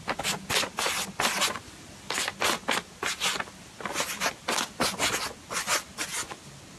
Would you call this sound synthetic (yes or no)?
no